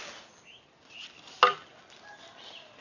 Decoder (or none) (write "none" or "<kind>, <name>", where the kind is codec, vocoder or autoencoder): none